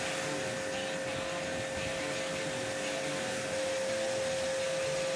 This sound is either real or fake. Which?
real